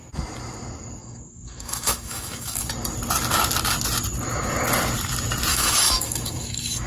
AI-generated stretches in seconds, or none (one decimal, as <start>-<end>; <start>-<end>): 1.0-2.7; 5.5-6.9